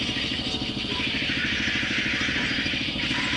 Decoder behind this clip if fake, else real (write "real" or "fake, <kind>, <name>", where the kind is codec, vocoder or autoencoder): real